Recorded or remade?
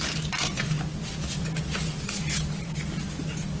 recorded